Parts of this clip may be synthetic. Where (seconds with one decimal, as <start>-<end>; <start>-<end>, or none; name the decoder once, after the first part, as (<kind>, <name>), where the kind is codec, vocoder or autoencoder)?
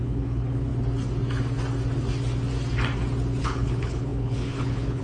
0.0-0.7 (codec, HILCodec); 3.4-5.0